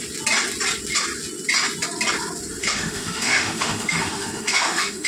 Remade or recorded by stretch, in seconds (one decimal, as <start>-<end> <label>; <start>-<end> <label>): 0.0-2.6 recorded; 2.6-5.1 remade